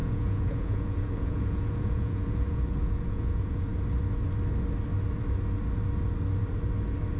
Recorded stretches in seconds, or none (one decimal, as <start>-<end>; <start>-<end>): 3.7-7.2